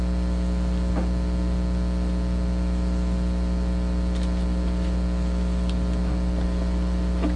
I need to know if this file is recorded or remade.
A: recorded